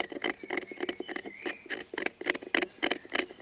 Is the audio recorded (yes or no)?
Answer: yes